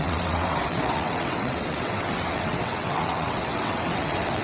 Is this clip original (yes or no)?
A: no